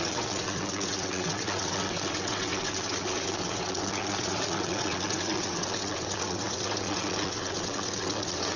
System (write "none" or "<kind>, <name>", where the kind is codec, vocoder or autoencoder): vocoder, WaveNeXt